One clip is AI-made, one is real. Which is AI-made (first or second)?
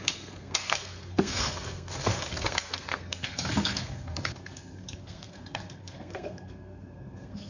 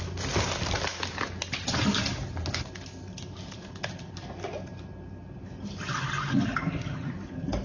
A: first